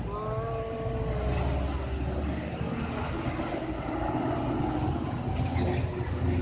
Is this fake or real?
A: real